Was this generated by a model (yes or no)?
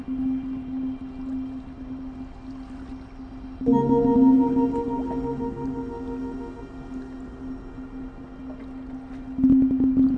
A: no